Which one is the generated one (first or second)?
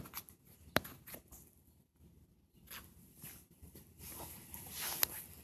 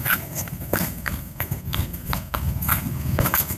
second